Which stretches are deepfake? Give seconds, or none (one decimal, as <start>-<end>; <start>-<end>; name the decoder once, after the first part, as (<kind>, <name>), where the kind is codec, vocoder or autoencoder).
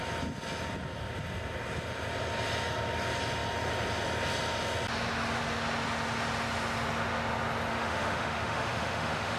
7.7-9.4 (autoencoder, DAC-VAE)